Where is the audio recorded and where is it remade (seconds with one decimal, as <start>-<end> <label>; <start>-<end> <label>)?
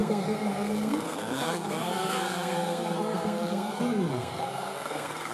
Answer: 0.0-5.3 remade